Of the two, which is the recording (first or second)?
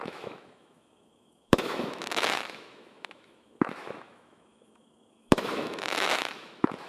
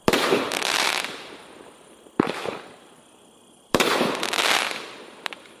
second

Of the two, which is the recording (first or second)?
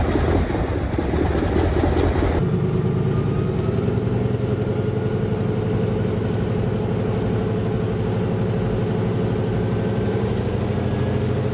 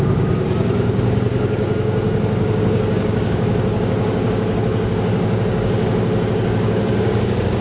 first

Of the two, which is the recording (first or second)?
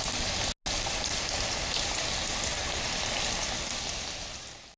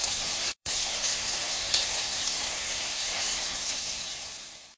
first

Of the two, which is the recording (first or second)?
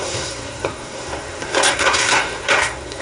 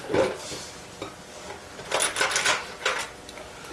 second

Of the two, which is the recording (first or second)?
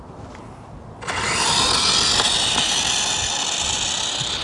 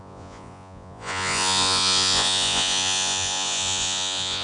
first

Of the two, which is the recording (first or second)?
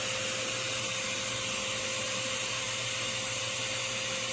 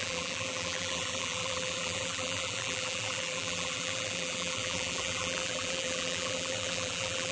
first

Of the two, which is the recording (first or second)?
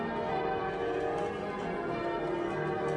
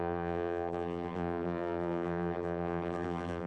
first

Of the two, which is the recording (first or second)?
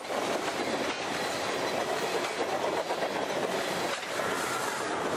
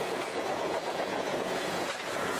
first